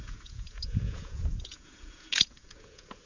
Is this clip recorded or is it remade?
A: remade